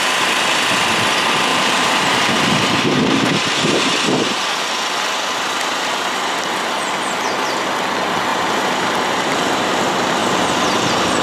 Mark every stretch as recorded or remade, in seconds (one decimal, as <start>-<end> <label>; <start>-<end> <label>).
0.0-1.5 recorded; 1.5-4.4 remade; 4.4-8.3 recorded; 8.3-9.7 remade; 9.7-11.2 recorded